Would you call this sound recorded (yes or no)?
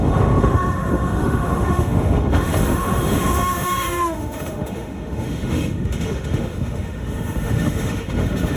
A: no